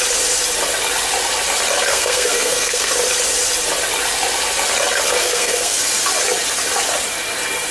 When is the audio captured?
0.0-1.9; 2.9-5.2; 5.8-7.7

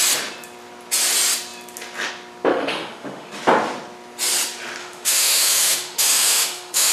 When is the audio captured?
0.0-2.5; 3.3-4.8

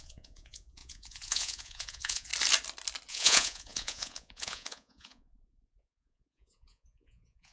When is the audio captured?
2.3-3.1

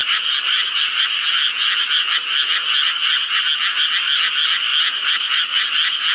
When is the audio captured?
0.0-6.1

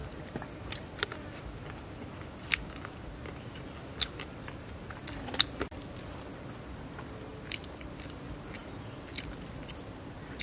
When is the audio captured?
0.0-10.4